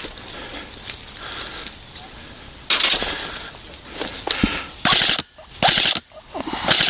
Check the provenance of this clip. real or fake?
real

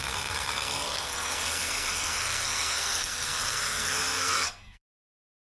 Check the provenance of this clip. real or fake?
fake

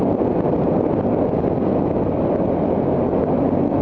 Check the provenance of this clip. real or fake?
real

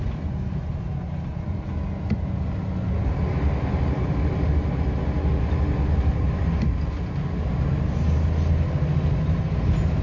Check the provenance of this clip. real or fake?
real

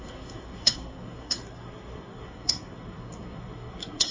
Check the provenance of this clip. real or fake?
fake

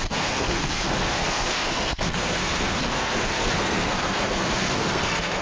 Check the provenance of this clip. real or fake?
fake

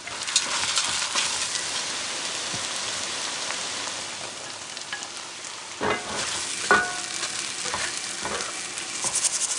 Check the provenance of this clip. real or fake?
real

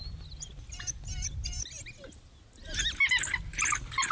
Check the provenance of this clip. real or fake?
real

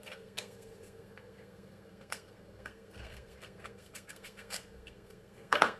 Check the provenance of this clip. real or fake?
fake